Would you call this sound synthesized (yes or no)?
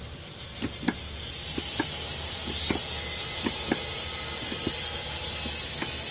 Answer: no